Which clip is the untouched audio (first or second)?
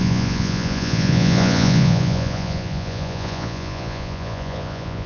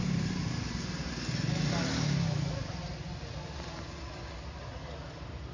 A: second